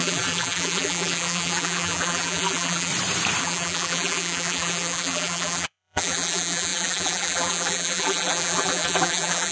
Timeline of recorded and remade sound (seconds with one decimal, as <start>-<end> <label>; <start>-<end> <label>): 0.0-2.9 remade; 2.9-3.4 recorded; 3.4-9.5 remade